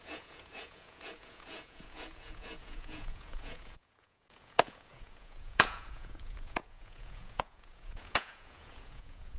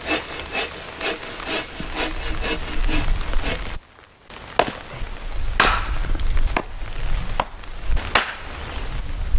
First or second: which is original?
second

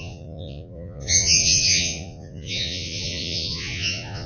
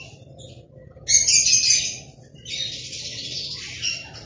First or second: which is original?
second